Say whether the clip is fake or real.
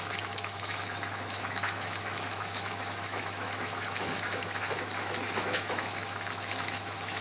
fake